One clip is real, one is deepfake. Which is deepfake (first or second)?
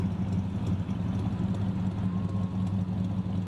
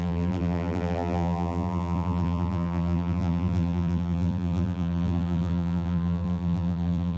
second